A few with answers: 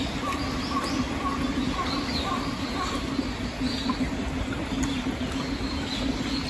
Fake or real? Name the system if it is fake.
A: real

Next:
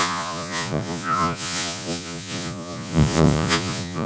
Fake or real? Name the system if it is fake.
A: fake, vocoder, Vocos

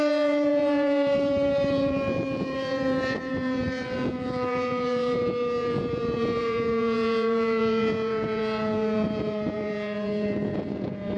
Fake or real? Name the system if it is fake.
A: fake, vocoder, Vocos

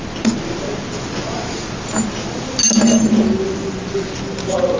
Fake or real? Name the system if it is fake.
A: real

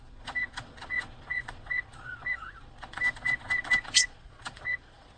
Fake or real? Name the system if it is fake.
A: fake, vocoder, Vocos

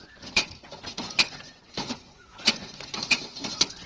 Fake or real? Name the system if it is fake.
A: fake, vocoder, Vocos